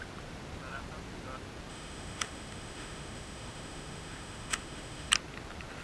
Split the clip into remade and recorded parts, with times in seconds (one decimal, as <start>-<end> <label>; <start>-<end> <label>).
0.0-1.7 recorded; 1.7-5.1 remade; 5.1-5.8 recorded